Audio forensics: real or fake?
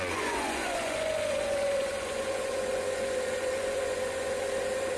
fake